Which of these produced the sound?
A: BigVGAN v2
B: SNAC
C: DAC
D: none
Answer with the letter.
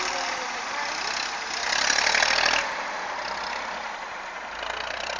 D